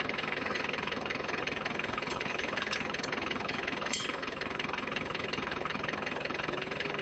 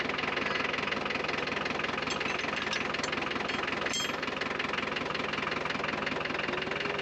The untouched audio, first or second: second